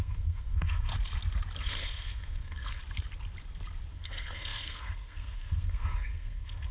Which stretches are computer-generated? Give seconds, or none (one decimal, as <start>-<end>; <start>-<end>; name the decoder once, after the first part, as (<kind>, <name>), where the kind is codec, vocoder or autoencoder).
0.0-0.9 (codec, SNAC); 1.6-2.8; 3.9-6.7